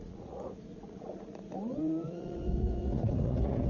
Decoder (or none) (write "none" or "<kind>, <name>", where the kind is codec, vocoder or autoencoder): vocoder, Vocos